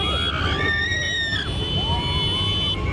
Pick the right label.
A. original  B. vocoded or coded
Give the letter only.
A